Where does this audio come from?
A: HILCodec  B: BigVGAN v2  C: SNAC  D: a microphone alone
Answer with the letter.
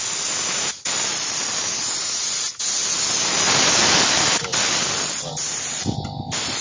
D